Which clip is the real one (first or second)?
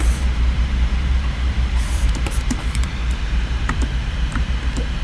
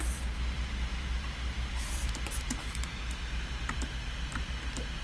second